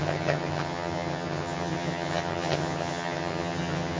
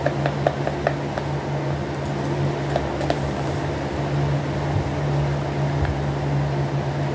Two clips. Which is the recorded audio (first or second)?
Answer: second